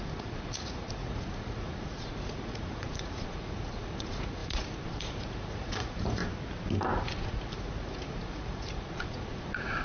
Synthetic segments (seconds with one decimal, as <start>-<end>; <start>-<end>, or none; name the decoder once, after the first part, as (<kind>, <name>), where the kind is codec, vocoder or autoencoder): 0.0-6.2 (vocoder, Vocos); 7.0-9.8